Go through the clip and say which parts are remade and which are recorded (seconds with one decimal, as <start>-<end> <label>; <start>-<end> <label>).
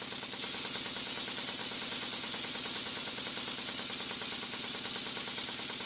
0.0-1.6 recorded; 1.6-3.2 remade; 3.2-5.9 recorded